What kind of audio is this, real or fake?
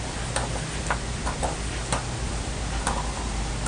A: real